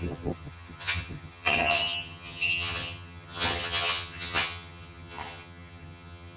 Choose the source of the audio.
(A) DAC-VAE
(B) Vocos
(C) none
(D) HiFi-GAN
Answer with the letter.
D